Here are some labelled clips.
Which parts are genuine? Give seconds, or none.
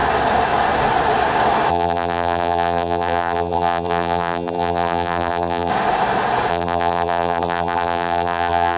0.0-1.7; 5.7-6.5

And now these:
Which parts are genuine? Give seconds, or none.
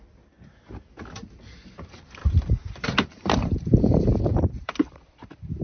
0.0-2.2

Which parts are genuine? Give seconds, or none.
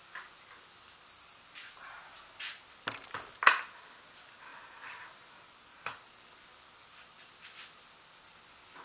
0.0-8.8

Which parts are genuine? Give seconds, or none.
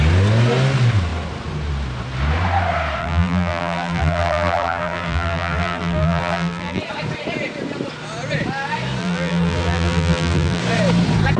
0.0-3.0; 6.8-9.0; 10.6-11.4